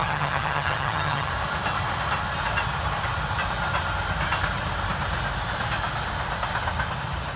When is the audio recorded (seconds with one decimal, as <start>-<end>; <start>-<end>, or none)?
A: 1.3-7.4